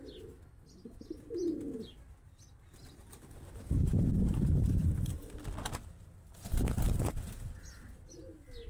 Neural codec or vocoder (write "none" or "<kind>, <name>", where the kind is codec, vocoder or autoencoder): none